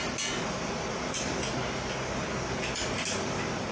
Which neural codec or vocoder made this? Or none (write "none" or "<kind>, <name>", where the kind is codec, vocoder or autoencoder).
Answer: none